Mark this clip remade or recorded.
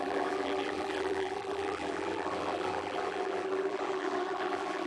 remade